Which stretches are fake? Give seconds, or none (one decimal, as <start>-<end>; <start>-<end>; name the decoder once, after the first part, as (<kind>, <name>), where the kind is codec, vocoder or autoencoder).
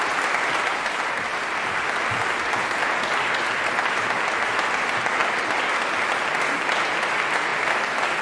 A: none